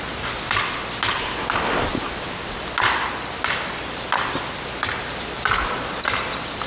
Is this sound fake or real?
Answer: real